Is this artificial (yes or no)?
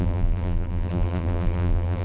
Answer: yes